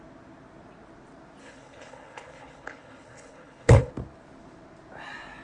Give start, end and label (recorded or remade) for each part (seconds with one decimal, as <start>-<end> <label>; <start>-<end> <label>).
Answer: 0.0-1.4 recorded; 1.4-3.9 remade; 3.9-5.4 recorded